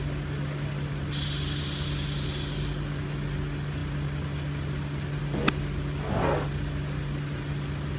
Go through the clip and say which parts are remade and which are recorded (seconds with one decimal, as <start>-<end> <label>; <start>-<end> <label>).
0.0-8.0 recorded